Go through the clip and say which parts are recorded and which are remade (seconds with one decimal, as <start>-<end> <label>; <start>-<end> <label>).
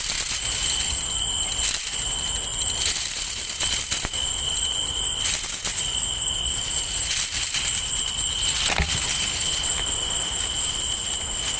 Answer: 0.0-11.6 recorded